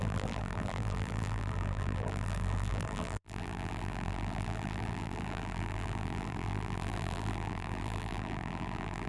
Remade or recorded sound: remade